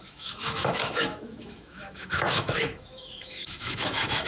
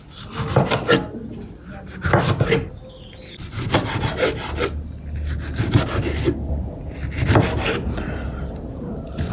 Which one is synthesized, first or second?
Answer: first